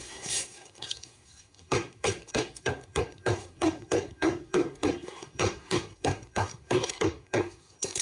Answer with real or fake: fake